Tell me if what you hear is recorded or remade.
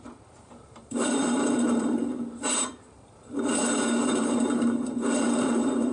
remade